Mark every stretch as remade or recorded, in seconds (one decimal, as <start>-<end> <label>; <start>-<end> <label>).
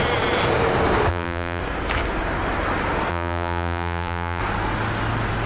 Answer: 0.0-1.1 recorded; 1.1-1.6 remade; 1.6-3.1 recorded; 3.1-4.4 remade; 4.4-5.5 recorded